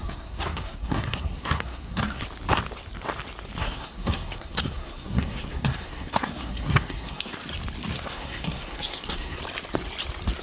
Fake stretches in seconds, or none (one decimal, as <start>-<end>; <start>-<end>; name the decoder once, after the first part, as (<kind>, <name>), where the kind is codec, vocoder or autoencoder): 0.0-2.2 (codec, SNAC); 3.6-7.3; 7.9-9.4